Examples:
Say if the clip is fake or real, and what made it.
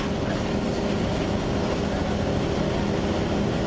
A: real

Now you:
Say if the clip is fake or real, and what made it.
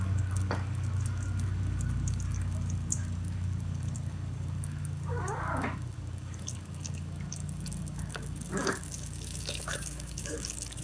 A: fake, codec, DAC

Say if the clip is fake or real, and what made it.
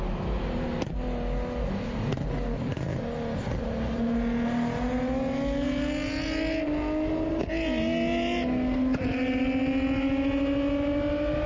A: real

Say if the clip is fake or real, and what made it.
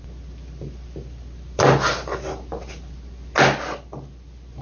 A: real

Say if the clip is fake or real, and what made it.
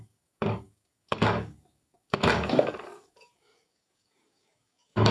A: fake, codec, DAC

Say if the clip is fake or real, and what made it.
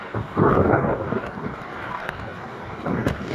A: fake, codec, DAC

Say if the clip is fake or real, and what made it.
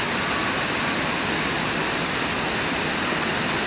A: real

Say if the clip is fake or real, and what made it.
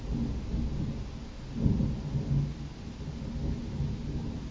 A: real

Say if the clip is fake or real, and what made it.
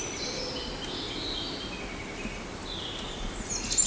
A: real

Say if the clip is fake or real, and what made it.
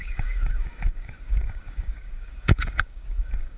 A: fake, codec, DAC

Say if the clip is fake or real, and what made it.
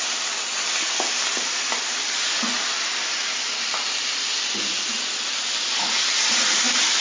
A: real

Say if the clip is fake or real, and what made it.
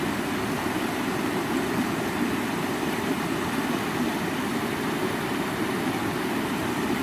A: real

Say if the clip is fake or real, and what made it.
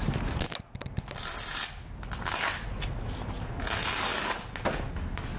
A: real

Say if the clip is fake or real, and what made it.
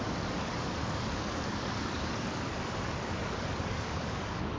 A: fake, codec, DAC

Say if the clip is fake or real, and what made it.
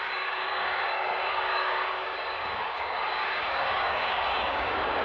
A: fake, codec, DAC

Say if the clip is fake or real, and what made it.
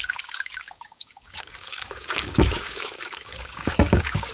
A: fake, codec, DAC